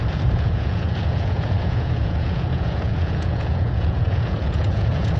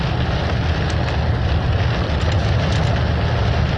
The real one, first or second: second